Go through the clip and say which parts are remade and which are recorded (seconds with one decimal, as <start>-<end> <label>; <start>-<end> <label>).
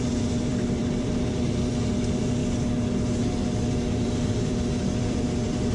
0.0-2.4 remade; 2.4-4.0 recorded; 4.0-5.7 remade